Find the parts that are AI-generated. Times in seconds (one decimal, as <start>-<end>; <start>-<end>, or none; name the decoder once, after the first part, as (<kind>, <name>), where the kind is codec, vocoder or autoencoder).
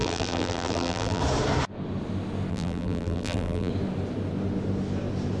0.0-1.2 (vocoder, BigVGAN v2); 2.5-3.7